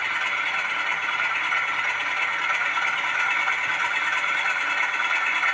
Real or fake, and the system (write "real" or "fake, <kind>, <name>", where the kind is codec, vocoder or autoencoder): real